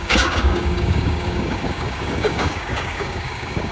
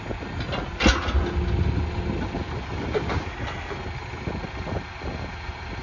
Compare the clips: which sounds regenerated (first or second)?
first